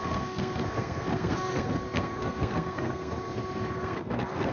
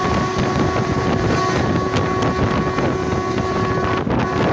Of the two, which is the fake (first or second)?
first